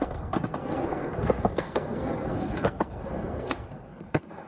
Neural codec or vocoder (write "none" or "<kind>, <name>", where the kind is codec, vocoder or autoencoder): codec, SNAC